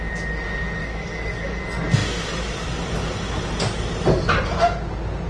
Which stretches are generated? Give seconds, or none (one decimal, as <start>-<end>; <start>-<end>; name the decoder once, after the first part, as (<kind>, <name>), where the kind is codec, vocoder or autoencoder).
0.8-1.6 (codec, DAC)